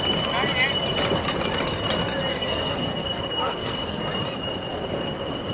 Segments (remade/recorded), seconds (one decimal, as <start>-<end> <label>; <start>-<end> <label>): 0.0-2.3 recorded; 2.3-4.0 remade; 4.0-5.5 recorded